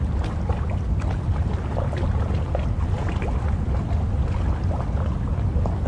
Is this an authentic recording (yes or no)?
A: yes